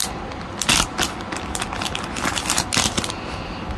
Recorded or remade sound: recorded